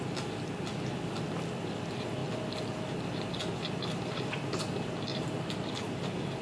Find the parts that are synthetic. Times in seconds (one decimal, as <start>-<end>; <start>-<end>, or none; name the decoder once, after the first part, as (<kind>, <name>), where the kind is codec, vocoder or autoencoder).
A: none